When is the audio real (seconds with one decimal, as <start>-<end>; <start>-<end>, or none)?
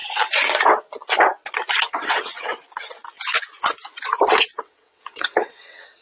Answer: 0.0-1.9; 2.5-4.4